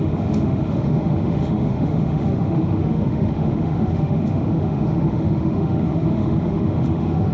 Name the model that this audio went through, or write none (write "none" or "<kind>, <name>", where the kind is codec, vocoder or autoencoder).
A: autoencoder, DAC-VAE